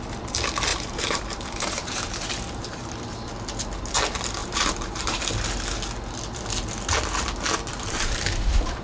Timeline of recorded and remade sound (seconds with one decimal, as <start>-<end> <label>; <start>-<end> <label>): 0.0-0.7 recorded; 0.7-3.3 remade; 3.3-4.4 recorded; 4.4-5.2 remade; 5.2-7.7 recorded; 7.7-8.8 remade